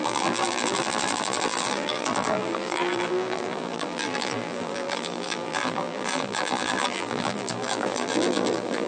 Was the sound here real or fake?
fake